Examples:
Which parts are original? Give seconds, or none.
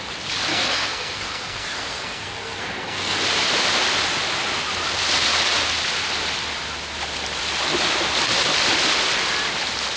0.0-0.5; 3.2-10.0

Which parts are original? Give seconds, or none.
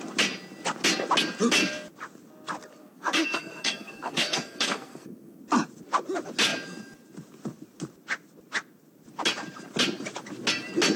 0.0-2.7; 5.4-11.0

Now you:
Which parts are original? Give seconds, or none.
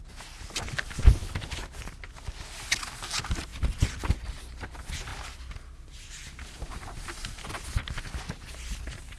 0.0-9.2